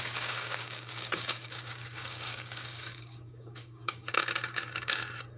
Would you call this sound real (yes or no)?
no